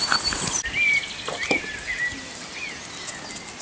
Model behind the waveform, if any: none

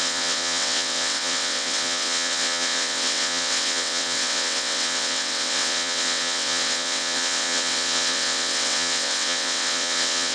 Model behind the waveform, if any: vocoder, WaveNeXt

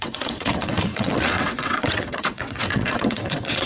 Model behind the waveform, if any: vocoder, WaveNeXt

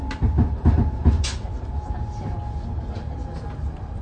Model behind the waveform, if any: none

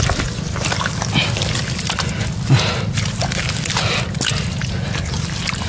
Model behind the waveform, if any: none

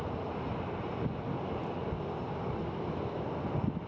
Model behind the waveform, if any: none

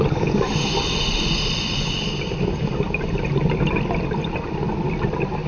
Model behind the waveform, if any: none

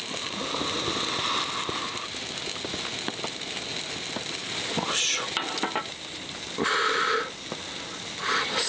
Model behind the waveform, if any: none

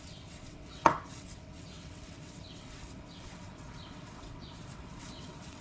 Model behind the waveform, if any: vocoder, WaveNeXt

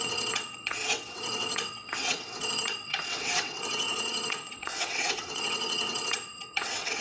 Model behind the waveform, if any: vocoder, WaveNeXt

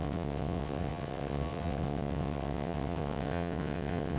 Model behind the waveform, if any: vocoder, WaveNeXt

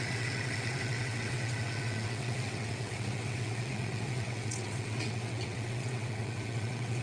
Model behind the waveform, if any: vocoder, WaveNeXt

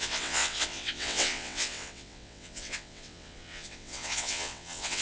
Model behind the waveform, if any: vocoder, WaveNeXt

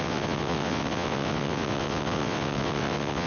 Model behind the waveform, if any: vocoder, WaveNeXt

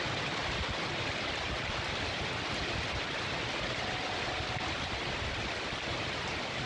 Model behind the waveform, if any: none